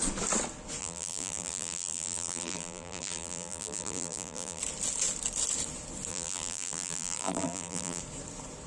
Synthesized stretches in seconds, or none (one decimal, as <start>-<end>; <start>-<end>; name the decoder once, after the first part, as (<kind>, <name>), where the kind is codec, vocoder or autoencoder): 0.8-4.6 (vocoder, BigVGAN v2); 6.1-8.0